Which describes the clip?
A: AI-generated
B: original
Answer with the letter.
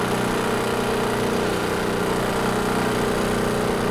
B